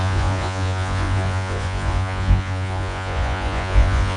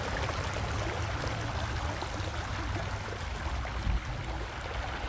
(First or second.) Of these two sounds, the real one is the second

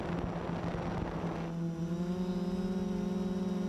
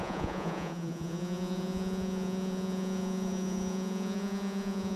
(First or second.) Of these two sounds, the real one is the first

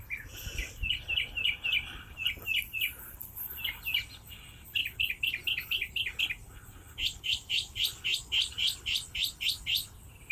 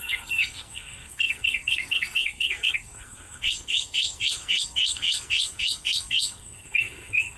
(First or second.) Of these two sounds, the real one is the first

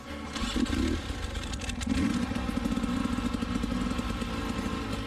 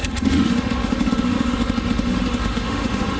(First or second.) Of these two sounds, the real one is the first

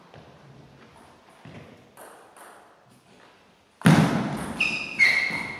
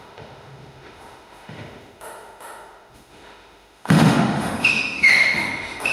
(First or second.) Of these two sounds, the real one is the first